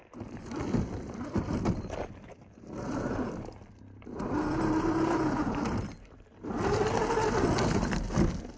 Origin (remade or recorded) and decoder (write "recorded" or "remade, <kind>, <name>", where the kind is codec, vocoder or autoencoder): recorded